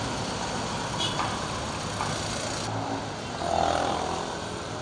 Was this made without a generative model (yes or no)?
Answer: yes